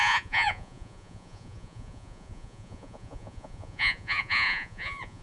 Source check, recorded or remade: remade